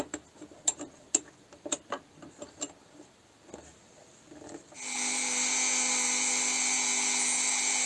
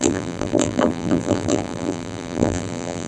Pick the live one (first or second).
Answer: first